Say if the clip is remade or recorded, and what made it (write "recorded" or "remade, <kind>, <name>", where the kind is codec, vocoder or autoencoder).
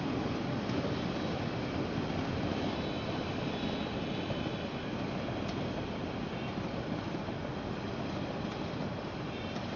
recorded